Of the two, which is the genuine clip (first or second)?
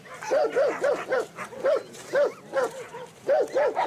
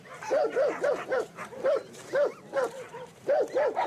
first